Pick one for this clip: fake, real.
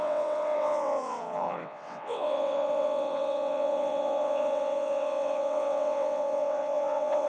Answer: fake